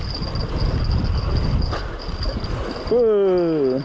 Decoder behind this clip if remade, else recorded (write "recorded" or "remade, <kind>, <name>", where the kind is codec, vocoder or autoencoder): recorded